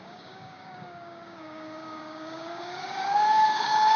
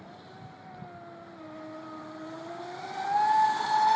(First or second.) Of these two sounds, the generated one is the first